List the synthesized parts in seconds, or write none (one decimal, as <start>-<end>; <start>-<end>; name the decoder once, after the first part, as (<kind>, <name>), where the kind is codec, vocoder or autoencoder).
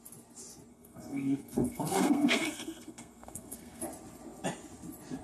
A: 0.7-3.8 (codec, SNAC)